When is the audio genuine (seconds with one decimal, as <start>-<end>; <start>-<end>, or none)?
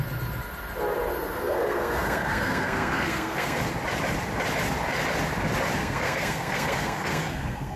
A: 0.0-1.4; 3.6-5.8